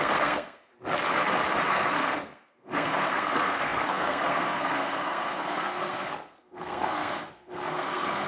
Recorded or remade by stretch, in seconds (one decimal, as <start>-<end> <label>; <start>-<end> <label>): 0.0-0.7 remade; 0.7-1.7 recorded; 1.7-8.3 remade

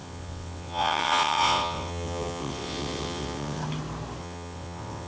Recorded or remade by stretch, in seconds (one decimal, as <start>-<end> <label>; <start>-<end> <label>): 0.0-3.6 remade; 3.6-4.2 recorded; 4.2-5.1 remade